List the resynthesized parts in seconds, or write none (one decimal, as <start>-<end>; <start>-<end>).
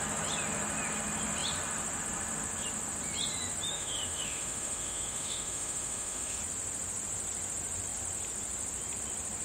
3.7-6.4